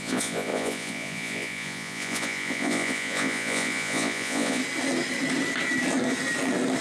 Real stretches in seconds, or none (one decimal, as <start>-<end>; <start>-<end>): 4.6-6.8

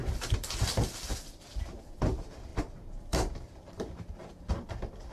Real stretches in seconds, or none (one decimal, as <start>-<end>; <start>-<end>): 0.0-2.5; 4.5-5.1

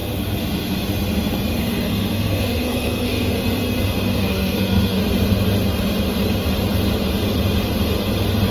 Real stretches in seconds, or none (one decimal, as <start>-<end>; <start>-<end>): 0.0-1.6; 3.4-4.1; 5.0-8.5

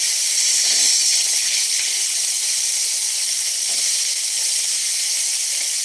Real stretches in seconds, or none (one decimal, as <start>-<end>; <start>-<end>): 0.0-0.5; 2.4-5.8

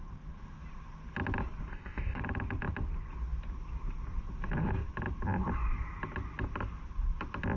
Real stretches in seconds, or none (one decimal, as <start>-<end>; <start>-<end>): 0.0-1.7; 2.2-7.6

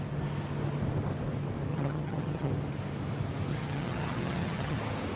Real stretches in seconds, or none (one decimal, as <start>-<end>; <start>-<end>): 0.0-1.7; 2.5-3.5; 4.8-5.2

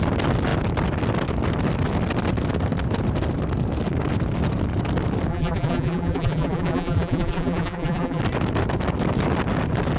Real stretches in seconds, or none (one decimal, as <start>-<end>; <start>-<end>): 0.0-5.3; 8.2-10.0

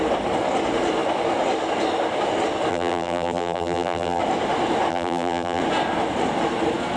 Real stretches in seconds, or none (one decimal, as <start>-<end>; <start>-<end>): 0.0-2.7; 4.2-4.9; 5.6-7.0